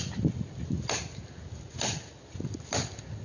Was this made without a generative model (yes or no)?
yes